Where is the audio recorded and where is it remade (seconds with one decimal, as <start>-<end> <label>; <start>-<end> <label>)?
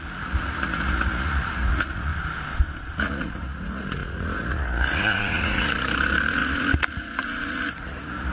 0.0-2.1 remade; 2.1-3.0 recorded; 3.0-8.3 remade